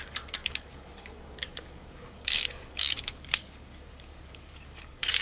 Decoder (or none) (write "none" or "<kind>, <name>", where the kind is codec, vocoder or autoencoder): codec, DAC